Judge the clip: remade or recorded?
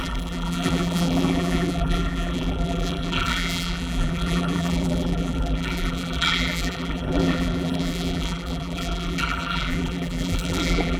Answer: remade